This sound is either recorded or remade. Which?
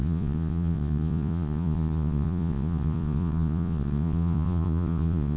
remade